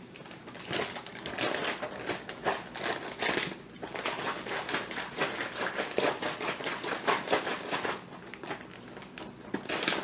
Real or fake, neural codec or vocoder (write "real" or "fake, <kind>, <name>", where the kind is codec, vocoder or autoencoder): real